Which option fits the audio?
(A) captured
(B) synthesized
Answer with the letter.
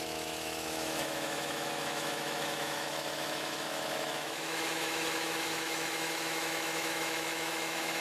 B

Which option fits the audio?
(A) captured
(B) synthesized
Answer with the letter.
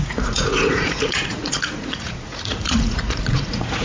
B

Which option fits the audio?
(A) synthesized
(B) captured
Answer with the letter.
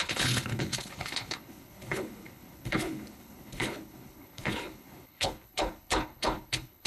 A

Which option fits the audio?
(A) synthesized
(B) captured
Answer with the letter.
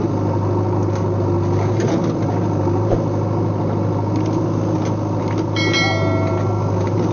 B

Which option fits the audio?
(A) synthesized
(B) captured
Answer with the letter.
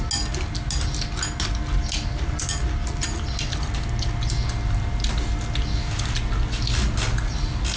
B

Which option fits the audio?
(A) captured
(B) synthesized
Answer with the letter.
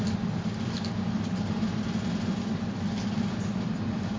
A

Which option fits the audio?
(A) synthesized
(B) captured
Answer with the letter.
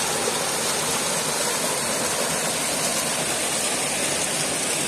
B